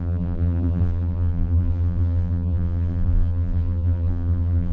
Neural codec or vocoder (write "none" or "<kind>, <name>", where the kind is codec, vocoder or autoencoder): vocoder, BigVGAN v2